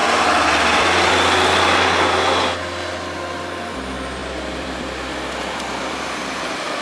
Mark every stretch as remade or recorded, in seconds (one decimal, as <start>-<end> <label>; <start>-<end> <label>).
0.0-4.2 recorded; 4.2-6.2 remade; 6.2-6.8 recorded